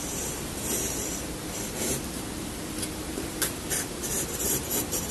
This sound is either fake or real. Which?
real